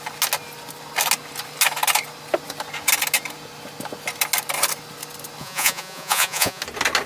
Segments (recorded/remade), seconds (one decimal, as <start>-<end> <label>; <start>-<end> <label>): 0.0-5.4 recorded; 5.4-6.6 remade; 6.6-7.1 recorded